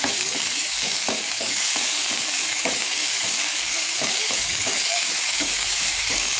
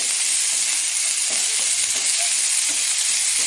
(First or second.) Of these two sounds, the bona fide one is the second